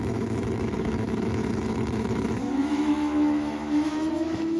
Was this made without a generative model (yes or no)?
no